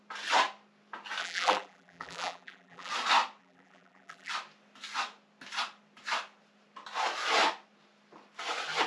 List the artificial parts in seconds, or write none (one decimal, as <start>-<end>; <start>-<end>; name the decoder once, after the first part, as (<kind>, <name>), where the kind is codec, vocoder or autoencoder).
1.2-2.9 (vocoder, BigVGAN v2); 3.4-4.3